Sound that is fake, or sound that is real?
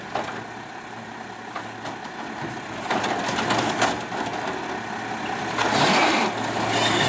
real